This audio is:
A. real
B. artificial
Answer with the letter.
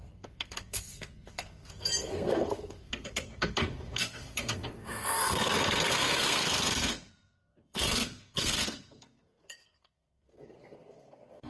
B